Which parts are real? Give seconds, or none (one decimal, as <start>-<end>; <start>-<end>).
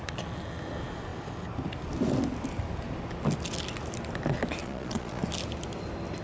0.0-4.6; 5.2-6.2